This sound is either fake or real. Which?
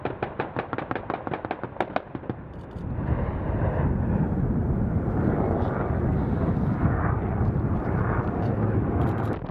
real